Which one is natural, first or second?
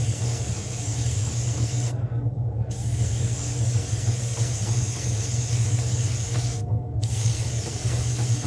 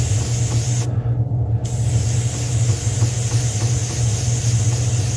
second